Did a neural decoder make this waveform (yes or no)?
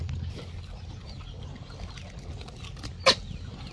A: no